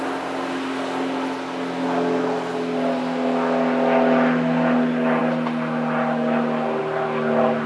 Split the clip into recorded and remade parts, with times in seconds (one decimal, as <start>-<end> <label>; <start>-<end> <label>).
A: 0.0-7.7 recorded